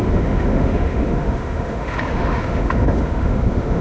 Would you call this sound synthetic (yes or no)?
yes